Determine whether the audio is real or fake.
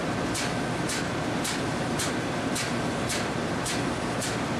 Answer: real